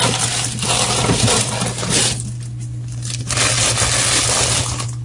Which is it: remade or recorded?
recorded